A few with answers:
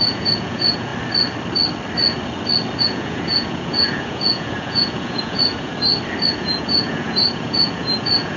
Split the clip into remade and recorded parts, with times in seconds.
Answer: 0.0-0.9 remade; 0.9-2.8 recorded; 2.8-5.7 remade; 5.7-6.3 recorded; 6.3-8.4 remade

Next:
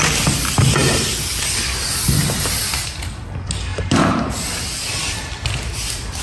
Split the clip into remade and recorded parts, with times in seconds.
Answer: 0.0-3.7 recorded; 3.7-4.2 remade; 4.2-6.2 recorded

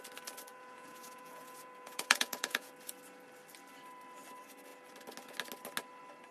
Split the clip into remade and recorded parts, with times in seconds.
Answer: 0.0-0.5 recorded; 0.5-2.7 remade; 2.7-6.3 recorded

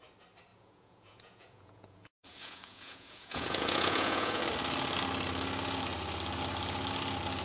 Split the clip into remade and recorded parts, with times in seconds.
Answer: 0.0-0.5 recorded; 0.5-4.4 remade; 4.4-7.4 recorded

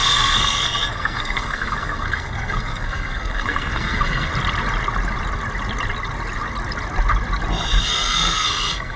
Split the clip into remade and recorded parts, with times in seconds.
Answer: 0.0-4.3 remade; 4.3-7.8 recorded; 7.8-9.0 remade

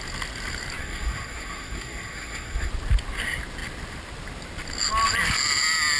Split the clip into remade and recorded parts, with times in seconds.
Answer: 0.0-0.8 recorded; 0.8-2.7 remade; 2.7-6.0 recorded

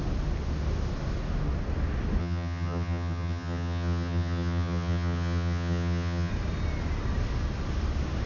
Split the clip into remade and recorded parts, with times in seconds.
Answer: 0.0-2.2 recorded; 2.2-6.3 remade; 6.3-8.3 recorded